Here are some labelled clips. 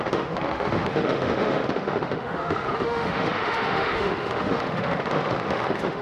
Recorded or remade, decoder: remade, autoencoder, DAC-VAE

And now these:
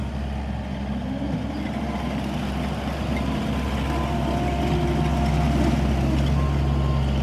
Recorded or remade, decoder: recorded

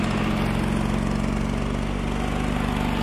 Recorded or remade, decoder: recorded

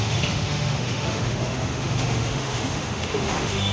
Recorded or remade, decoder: remade, autoencoder, DAC-VAE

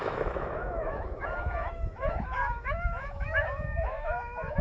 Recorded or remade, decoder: remade, autoencoder, DAC-VAE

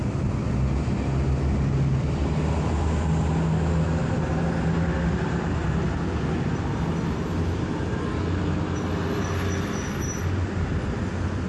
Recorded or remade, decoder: recorded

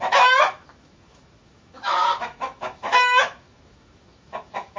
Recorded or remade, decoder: remade, autoencoder, DAC-VAE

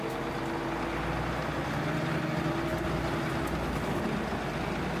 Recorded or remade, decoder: recorded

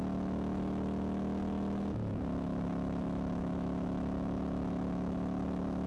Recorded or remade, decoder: remade, autoencoder, DAC-VAE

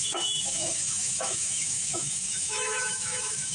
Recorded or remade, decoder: remade, autoencoder, DAC-VAE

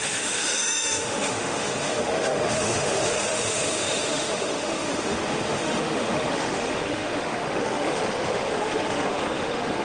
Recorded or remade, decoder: remade, autoencoder, DAC-VAE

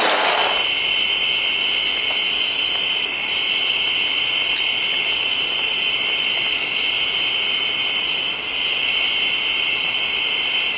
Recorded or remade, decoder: recorded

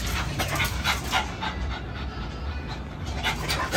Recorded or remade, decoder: recorded